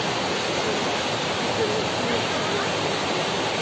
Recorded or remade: recorded